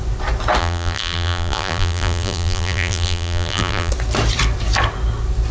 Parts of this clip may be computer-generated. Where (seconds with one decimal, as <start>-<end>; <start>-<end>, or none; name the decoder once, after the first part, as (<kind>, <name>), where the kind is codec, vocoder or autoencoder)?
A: 0.6-3.9 (vocoder, BigVGAN v2)